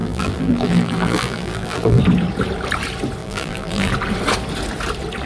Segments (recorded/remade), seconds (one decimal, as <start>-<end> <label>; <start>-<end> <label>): 0.0-2.0 remade; 2.0-3.2 recorded; 3.2-3.9 remade; 3.9-5.3 recorded

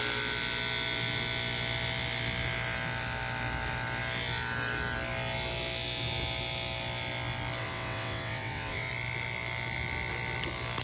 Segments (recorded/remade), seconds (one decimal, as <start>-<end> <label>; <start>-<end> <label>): 0.0-7.6 recorded; 7.6-8.9 remade; 8.9-10.8 recorded

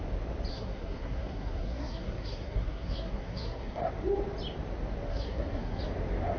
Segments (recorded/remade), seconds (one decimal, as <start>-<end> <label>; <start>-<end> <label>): 0.0-0.5 recorded; 0.5-3.9 remade; 3.9-5.1 recorded; 5.1-5.8 remade; 5.8-6.4 recorded

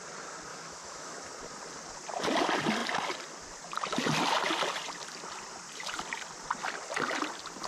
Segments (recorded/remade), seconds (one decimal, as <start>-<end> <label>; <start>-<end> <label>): 0.0-0.5 recorded; 0.5-1.3 remade; 1.3-7.7 recorded

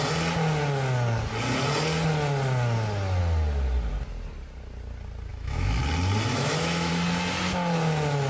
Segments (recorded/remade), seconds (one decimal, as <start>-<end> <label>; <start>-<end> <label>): 0.0-5.3 recorded; 5.3-5.8 remade; 5.8-6.3 recorded; 6.3-6.9 remade; 6.9-8.3 recorded

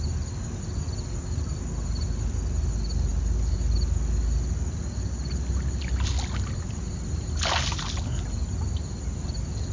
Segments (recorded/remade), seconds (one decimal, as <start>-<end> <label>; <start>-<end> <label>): 0.0-9.7 recorded

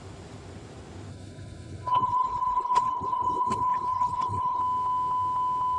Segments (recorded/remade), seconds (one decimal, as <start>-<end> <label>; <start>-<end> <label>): 0.0-1.1 recorded; 1.1-4.6 remade; 4.6-5.8 recorded